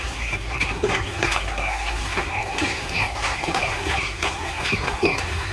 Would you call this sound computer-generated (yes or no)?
yes